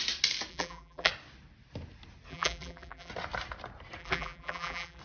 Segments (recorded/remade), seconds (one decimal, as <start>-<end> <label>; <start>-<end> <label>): 0.0-0.5 recorded; 0.5-1.1 remade; 1.1-2.3 recorded; 2.3-3.1 remade; 3.1-4.0 recorded; 4.0-5.0 remade